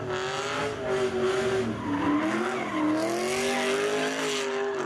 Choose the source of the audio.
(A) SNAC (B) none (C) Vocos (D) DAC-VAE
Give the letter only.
B